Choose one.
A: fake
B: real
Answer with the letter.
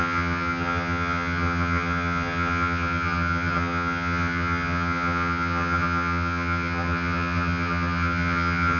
A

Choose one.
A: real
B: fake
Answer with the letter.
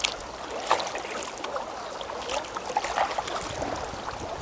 A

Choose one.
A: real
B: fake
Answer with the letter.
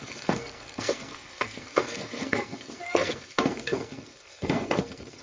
B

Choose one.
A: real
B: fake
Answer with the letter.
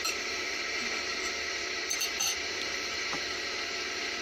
B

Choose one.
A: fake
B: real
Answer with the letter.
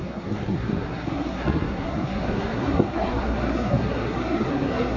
A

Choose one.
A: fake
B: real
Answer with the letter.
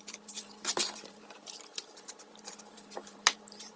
A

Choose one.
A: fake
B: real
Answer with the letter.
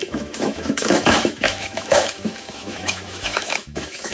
A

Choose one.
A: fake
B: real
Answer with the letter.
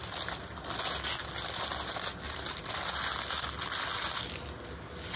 B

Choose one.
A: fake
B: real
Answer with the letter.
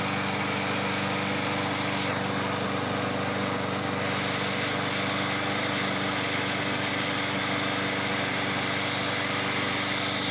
B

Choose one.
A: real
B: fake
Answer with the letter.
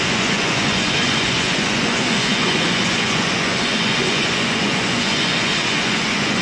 B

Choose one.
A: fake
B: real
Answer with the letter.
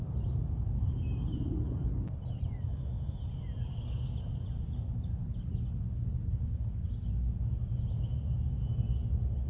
B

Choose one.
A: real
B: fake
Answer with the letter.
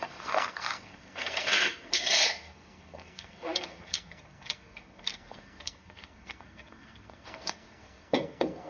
B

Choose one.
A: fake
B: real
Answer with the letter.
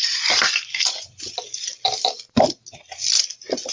B